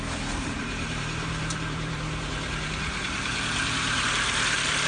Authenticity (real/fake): fake